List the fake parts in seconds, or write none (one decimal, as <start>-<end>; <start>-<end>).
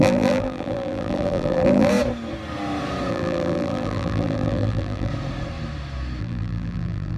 0.0-1.9; 3.1-5.1; 6.2-7.2